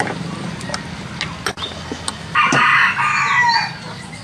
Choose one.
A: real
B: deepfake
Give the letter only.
A